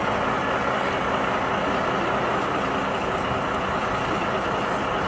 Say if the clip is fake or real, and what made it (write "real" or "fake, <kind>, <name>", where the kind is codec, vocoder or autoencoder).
real